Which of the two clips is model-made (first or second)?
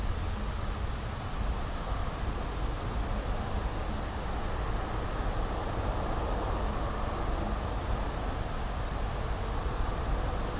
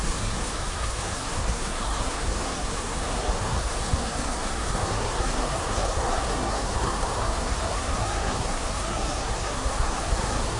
second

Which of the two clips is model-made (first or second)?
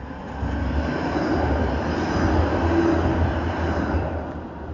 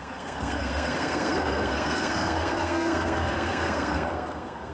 second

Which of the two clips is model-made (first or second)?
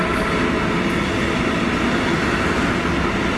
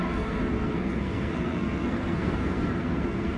second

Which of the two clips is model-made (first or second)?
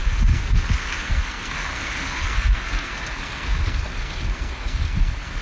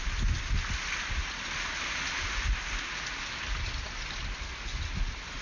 first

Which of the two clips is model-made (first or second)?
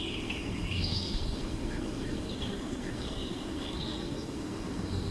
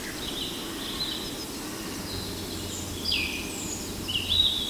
first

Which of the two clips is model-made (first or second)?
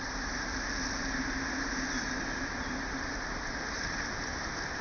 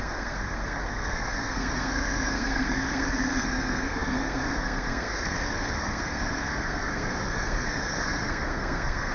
second